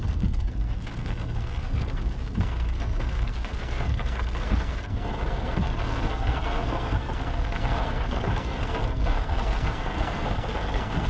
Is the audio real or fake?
fake